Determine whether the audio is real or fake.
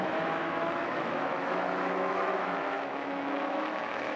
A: fake